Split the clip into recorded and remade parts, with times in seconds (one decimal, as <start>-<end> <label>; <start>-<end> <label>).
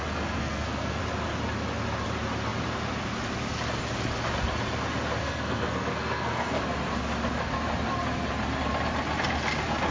0.0-0.4 recorded; 0.4-1.0 remade; 1.0-5.2 recorded; 5.2-6.6 remade; 6.6-9.9 recorded